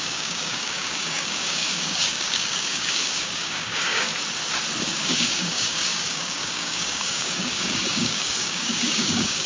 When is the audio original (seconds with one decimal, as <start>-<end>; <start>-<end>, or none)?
4.1-4.8